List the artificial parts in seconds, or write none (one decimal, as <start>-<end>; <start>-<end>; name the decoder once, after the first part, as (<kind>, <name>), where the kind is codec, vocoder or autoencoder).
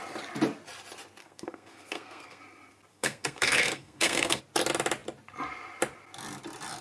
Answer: 1.2-2.4 (codec, SNAC); 2.9-4.4